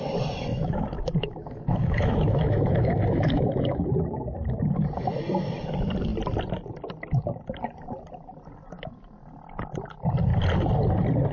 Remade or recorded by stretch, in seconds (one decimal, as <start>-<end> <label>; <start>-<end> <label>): 0.0-0.5 recorded; 0.5-3.9 remade; 3.9-11.3 recorded